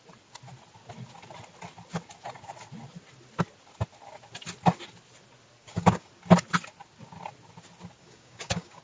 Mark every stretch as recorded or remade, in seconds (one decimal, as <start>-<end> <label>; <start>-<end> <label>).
0.0-5.6 recorded; 5.6-6.1 remade; 6.1-8.0 recorded; 8.0-8.8 remade